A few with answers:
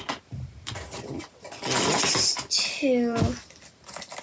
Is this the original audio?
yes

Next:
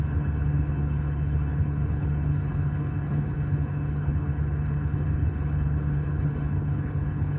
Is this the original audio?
no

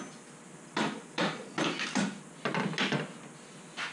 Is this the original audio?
yes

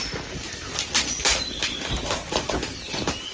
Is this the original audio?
yes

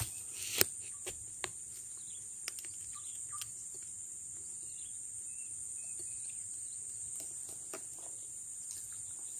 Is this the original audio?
yes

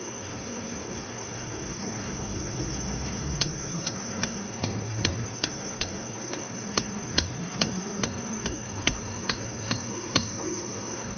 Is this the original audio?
no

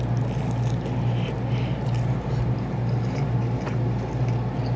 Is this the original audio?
yes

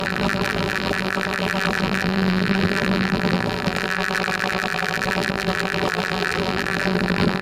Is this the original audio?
no